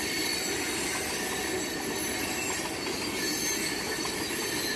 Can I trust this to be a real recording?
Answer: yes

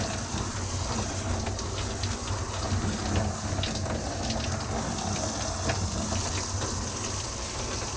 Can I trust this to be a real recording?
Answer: yes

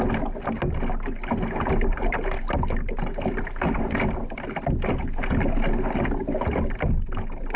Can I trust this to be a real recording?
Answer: yes